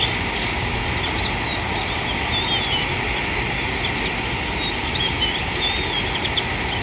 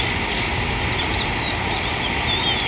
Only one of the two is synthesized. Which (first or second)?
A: second